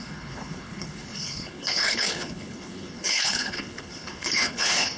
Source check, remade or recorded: remade